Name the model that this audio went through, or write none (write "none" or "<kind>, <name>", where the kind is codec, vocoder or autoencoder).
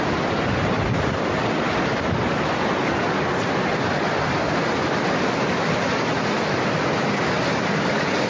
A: none